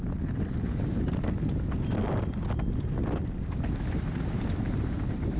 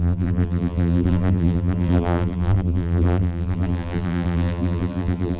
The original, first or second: first